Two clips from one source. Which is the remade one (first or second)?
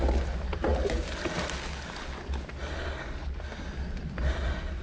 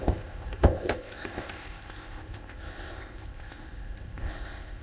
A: second